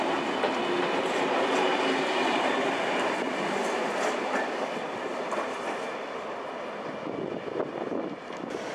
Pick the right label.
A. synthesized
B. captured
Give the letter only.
B